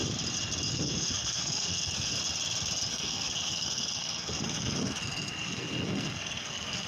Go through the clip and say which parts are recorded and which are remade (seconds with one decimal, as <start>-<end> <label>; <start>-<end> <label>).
0.0-0.7 recorded; 0.7-2.2 remade; 2.2-2.9 recorded; 2.9-6.9 remade